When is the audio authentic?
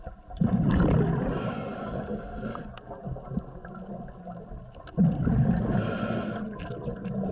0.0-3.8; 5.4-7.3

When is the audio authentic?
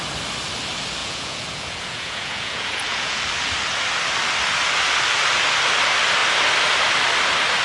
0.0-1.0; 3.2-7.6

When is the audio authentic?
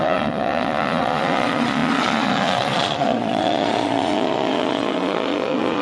none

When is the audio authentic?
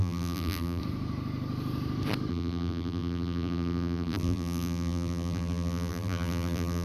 0.8-2.3